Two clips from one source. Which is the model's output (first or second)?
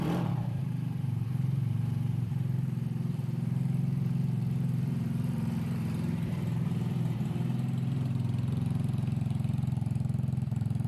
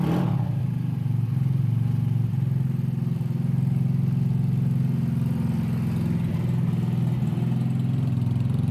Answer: first